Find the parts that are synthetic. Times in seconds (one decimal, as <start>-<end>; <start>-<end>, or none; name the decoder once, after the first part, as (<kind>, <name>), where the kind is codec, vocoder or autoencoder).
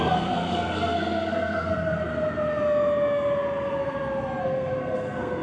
0.0-2.1 (codec, SNAC); 4.4-5.4